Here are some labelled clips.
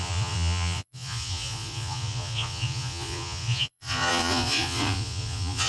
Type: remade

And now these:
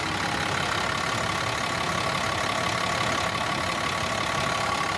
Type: recorded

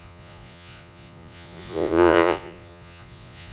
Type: remade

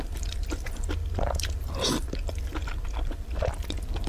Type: recorded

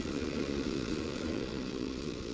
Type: remade